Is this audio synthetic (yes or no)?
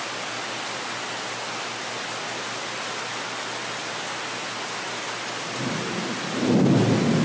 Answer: no